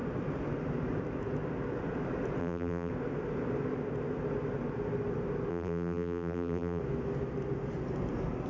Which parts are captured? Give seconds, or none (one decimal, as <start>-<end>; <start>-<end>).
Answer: 0.0-2.4; 2.9-5.5; 6.8-8.5